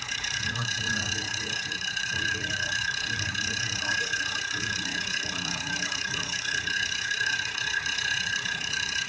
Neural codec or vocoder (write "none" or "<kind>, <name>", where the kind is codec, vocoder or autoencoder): vocoder, Vocos